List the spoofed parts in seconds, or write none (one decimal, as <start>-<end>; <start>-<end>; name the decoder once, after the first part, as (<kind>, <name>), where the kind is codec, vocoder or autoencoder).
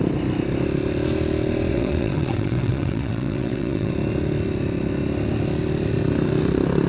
1.7-3.9 (vocoder, WaveNeXt)